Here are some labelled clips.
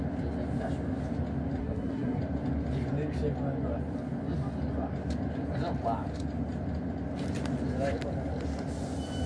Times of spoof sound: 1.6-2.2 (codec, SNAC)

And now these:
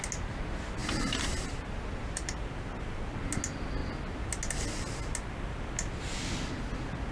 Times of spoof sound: 0.8-2.5 (vocoder, BigVGAN v2)

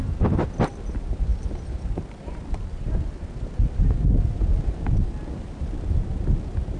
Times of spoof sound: none

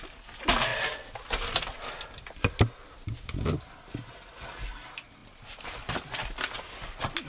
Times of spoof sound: none